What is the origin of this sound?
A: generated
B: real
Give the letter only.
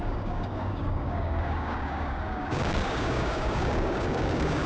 A